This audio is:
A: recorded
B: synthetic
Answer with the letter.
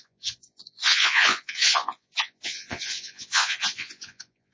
B